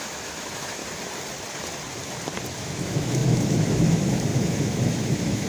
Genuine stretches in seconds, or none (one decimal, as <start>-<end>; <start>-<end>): 0.8-2.6